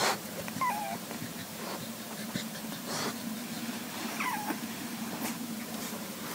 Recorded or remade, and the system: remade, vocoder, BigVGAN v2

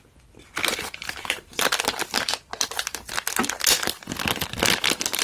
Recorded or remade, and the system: recorded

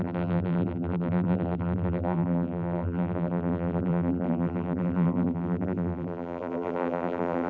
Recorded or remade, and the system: remade, vocoder, BigVGAN v2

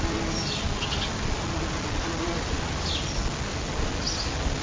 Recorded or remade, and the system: recorded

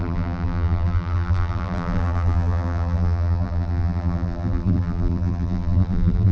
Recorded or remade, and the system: remade, vocoder, BigVGAN v2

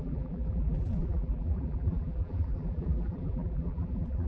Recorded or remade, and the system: remade, vocoder, BigVGAN v2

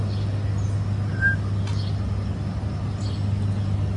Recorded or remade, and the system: recorded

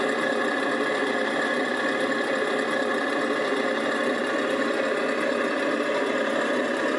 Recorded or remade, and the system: remade, vocoder, BigVGAN v2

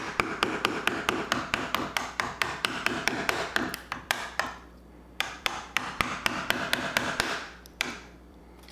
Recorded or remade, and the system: remade, vocoder, BigVGAN v2